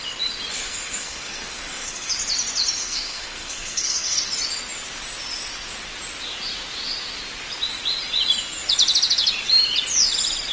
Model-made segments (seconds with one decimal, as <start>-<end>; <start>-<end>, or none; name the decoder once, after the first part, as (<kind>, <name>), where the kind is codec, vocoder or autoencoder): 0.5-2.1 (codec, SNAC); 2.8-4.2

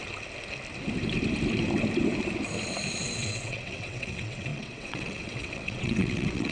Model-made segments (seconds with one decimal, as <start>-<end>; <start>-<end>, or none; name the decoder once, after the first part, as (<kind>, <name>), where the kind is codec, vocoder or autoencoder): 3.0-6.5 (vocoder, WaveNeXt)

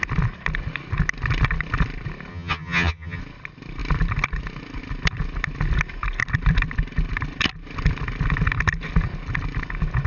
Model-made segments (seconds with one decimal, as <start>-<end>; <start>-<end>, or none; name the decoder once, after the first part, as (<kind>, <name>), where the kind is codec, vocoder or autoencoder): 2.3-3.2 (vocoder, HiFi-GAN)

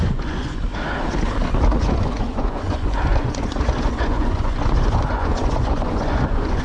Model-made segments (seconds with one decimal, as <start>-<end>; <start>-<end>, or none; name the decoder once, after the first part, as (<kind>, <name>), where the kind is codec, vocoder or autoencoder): 0.0-0.6 (vocoder, Vocos); 1.8-6.6

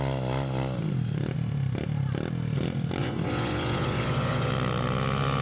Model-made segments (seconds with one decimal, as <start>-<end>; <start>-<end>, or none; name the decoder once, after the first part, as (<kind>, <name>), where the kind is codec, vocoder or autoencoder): 3.0-4.5 (vocoder, Vocos)